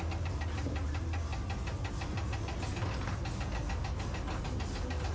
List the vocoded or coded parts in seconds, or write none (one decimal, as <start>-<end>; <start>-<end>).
none

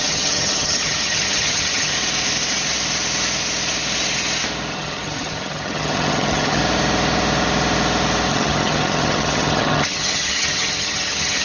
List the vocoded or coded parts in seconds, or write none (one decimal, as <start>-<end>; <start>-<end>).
0.0-1.9; 4.7-6.6; 8.3-11.4